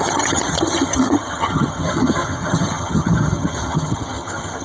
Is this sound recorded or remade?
remade